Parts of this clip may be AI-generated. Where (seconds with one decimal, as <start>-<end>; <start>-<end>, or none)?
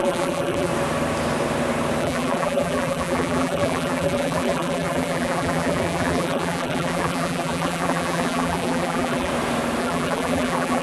0.0-0.7; 2.0-9.3; 9.8-10.8